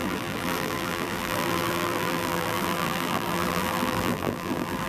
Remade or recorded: remade